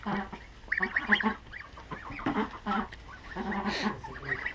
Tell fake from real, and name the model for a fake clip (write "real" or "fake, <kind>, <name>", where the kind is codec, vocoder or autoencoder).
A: real